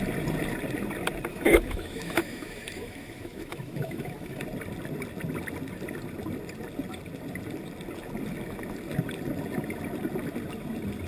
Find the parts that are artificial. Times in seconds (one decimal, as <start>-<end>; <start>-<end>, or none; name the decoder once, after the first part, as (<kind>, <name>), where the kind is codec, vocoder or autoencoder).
1.3-4.4 (autoencoder, DAC-VAE)